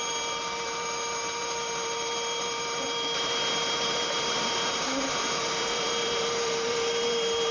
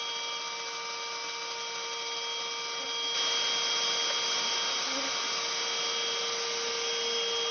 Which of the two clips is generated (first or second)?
first